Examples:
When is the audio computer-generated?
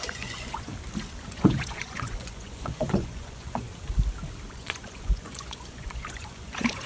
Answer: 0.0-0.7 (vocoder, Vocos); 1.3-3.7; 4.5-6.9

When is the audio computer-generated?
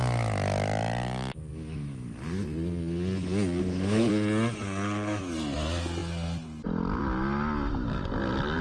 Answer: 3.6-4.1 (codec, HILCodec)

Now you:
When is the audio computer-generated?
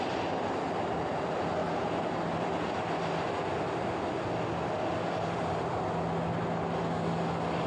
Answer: none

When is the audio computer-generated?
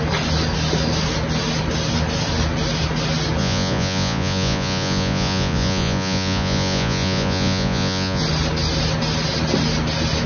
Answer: 3.4-8.2 (vocoder, Vocos)